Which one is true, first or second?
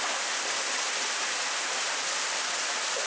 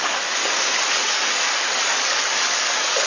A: first